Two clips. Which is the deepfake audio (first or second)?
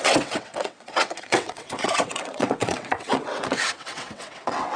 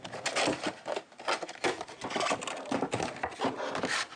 first